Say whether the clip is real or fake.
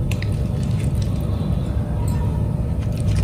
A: real